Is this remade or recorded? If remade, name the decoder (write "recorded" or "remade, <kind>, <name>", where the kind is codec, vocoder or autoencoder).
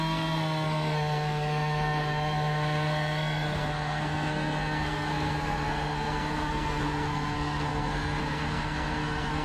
remade, codec, SNAC